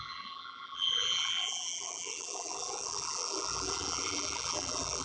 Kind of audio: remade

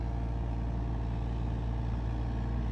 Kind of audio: recorded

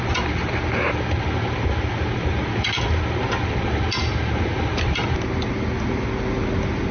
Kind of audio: recorded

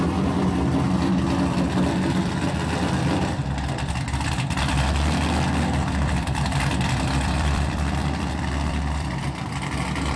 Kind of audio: remade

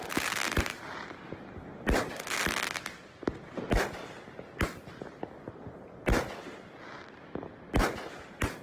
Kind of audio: recorded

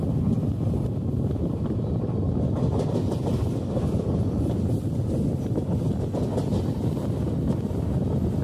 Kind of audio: recorded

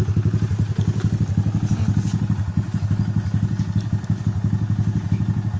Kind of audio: recorded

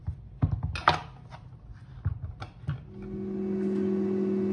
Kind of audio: recorded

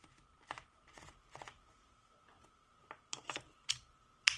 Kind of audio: remade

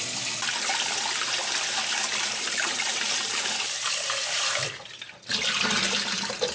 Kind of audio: remade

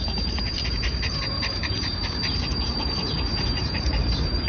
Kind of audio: remade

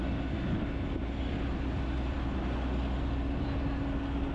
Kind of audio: recorded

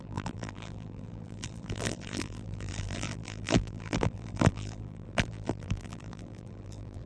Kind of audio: remade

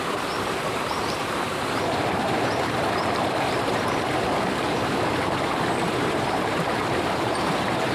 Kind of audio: remade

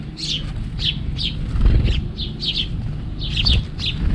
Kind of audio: recorded